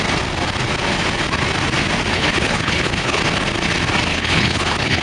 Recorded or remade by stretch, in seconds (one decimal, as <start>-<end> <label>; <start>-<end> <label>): 0.0-2.1 recorded; 2.1-3.2 remade; 3.2-4.1 recorded; 4.1-5.0 remade